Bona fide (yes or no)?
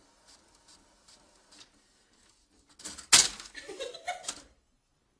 yes